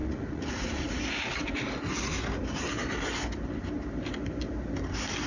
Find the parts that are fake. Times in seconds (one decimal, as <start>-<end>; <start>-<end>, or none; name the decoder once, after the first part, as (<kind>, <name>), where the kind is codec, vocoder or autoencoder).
0.0-1.0 (vocoder, Vocos)